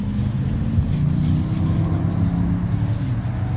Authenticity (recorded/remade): recorded